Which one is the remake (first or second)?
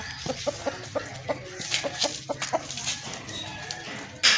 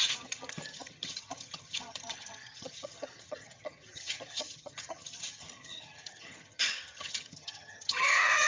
second